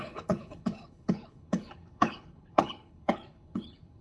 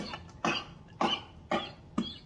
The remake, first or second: first